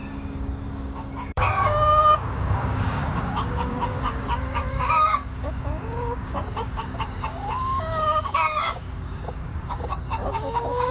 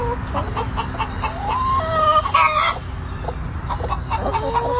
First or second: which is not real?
first